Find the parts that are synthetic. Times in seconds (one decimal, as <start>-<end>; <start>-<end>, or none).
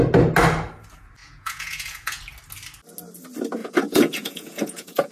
1.2-2.2; 3.6-5.1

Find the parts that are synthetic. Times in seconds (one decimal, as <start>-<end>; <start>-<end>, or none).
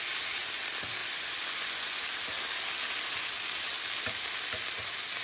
1.0-2.0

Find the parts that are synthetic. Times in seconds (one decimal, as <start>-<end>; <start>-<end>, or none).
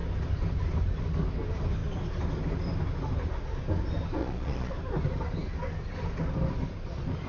4.2-4.7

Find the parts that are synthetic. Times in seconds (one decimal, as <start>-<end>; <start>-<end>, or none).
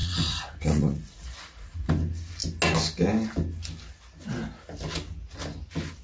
0.0-1.9